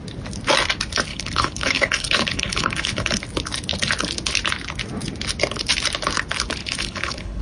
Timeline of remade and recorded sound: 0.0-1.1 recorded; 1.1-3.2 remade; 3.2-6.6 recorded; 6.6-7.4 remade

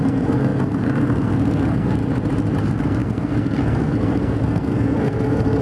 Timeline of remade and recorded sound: 0.0-2.0 remade; 2.0-2.6 recorded; 2.6-5.6 remade

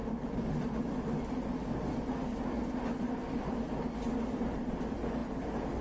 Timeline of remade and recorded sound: 0.0-5.8 recorded

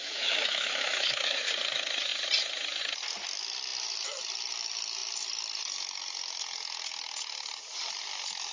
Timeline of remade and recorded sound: 0.0-1.5 remade; 1.5-8.5 recorded